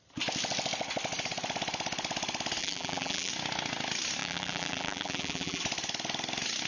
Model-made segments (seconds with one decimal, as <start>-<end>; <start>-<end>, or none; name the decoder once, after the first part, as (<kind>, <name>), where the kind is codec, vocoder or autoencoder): 2.6-3.3 (vocoder, BigVGAN v2); 4.2-5.6